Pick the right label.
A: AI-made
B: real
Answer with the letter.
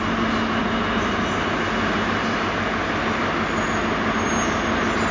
B